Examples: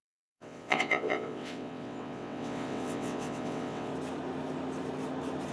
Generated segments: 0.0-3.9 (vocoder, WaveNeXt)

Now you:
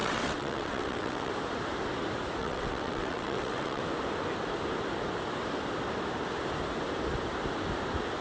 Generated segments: 0.0-1.3 (vocoder, WaveNeXt); 2.4-3.8

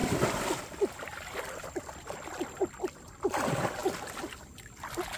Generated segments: 1.1-2.7 (vocoder, BigVGAN v2)

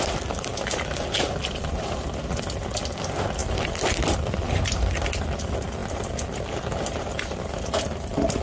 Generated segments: 0.5-2.2 (vocoder, BigVGAN v2); 3.4-3.9

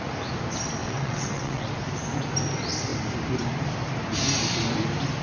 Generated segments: 0.8-1.7 (vocoder, WaveNeXt)

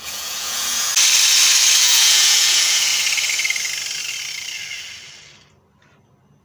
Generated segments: 0.0-0.9 (vocoder, Vocos); 1.8-2.9